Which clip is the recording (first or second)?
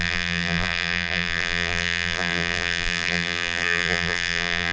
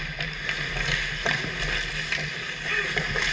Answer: second